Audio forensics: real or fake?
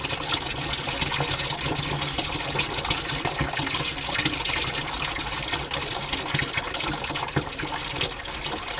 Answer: real